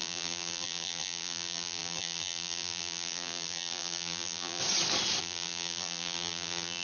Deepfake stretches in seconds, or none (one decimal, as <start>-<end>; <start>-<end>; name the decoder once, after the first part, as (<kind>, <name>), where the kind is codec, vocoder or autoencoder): 0.0-4.6 (vocoder, BigVGAN v2); 5.2-6.8